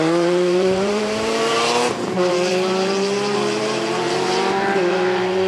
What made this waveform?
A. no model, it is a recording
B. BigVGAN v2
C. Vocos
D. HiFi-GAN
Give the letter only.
B